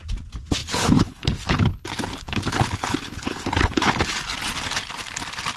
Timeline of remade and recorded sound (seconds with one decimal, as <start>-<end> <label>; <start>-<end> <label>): 0.0-0.6 recorded; 0.6-4.0 remade; 4.0-5.6 recorded